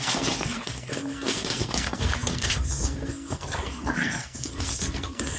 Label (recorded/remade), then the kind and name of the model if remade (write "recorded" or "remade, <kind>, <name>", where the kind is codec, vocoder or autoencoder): remade, codec, SNAC